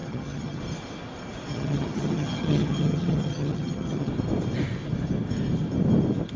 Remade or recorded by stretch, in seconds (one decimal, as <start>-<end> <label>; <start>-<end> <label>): 0.0-0.6 remade; 0.6-1.5 recorded; 1.5-4.1 remade; 4.1-6.4 recorded